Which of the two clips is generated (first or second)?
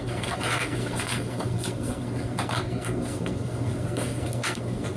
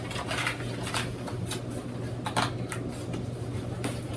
first